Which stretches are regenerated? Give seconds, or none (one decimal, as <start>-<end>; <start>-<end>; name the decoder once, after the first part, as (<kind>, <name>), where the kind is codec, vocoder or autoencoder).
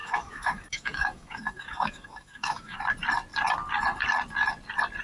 0.0-2.8 (autoencoder, DAC-VAE)